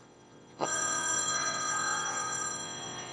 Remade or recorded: remade